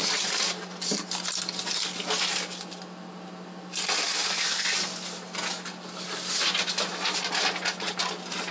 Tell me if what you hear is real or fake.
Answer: real